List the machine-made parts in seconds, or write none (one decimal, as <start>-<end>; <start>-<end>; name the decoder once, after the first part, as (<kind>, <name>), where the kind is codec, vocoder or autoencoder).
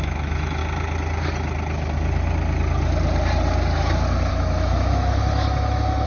0.0-0.6 (autoencoder, DAC-VAE); 4.3-6.1